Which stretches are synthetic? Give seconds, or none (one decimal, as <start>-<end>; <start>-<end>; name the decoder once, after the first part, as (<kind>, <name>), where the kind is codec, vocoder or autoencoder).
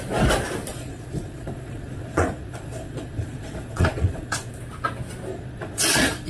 0.7-4.5 (vocoder, Vocos); 5.3-6.3